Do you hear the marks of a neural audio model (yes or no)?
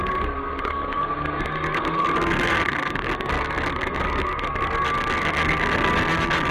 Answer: yes